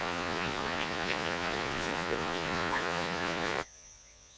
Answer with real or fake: fake